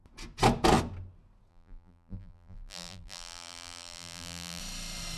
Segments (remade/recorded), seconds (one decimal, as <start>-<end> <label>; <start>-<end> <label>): 0.0-1.5 recorded; 1.5-4.6 remade; 4.6-5.2 recorded